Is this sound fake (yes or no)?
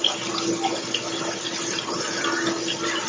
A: no